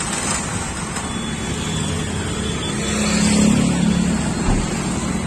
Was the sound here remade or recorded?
recorded